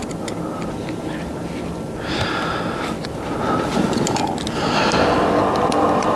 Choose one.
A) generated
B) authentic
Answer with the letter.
B